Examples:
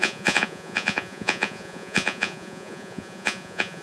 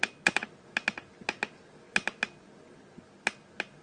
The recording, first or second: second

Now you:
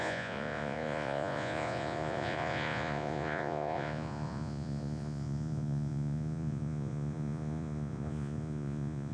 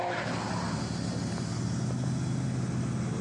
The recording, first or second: second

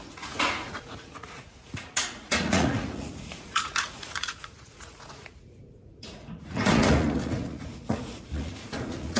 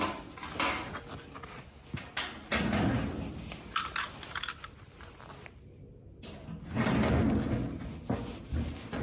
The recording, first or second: second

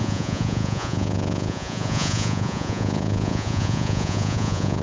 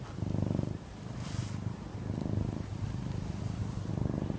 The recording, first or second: second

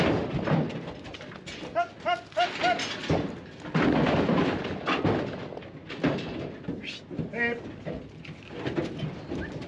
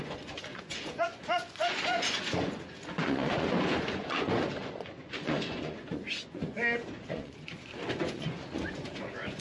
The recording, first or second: first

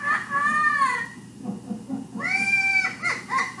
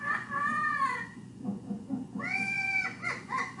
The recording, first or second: first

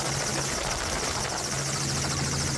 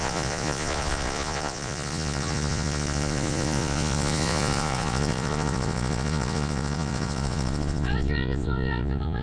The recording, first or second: first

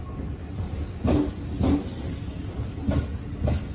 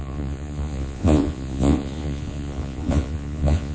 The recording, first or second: first